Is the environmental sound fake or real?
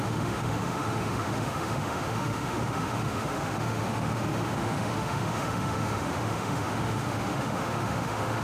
fake